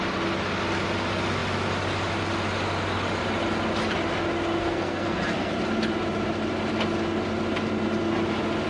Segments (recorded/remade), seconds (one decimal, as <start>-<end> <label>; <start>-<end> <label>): 0.0-4.6 recorded; 4.6-5.5 remade; 5.5-8.7 recorded